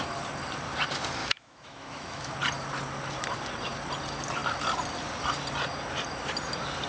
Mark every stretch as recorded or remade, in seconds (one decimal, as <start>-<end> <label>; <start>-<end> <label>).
0.0-1.2 recorded; 1.2-2.3 remade; 2.3-6.9 recorded